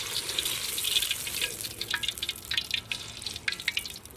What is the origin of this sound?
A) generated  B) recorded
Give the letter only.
B